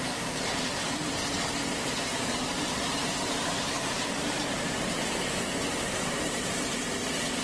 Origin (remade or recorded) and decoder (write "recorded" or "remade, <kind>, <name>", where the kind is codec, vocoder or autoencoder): remade, vocoder, BigVGAN v2